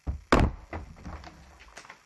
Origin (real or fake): real